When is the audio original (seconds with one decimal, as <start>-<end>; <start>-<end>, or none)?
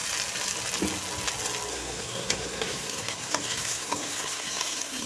0.0-1.7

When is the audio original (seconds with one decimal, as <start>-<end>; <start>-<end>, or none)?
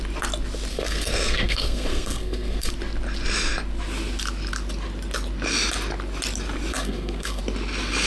0.0-0.7; 2.7-6.7; 7.4-8.1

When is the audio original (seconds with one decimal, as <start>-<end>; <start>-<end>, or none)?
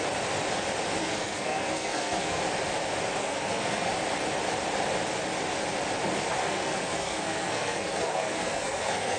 0.0-1.0; 2.4-3.2; 3.9-6.4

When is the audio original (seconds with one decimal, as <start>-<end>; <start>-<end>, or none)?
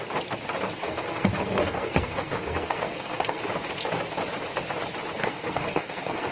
0.0-0.8; 3.4-5.2